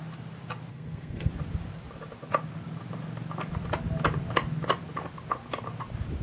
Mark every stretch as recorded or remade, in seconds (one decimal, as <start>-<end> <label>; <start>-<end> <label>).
0.0-0.7 recorded; 0.7-1.3 remade; 1.3-6.2 recorded